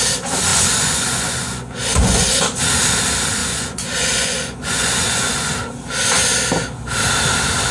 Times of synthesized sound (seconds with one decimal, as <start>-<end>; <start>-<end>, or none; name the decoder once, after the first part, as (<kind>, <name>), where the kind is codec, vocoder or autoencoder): 0.5-2.6 (vocoder, Vocos); 3.4-5.5